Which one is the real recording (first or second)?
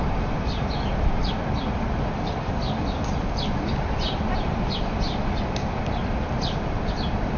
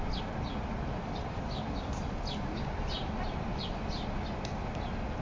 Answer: second